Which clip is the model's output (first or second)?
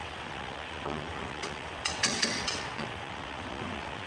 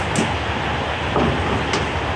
first